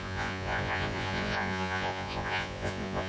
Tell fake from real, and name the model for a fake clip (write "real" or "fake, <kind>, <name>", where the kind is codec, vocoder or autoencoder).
fake, vocoder, Vocos